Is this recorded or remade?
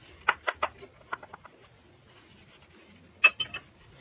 recorded